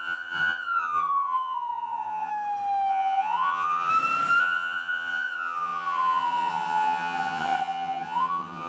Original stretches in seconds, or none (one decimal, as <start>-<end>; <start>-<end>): 2.3-2.9; 3.9-4.4